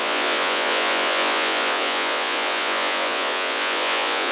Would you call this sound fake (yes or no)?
yes